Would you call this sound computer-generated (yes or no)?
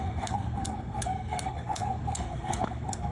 yes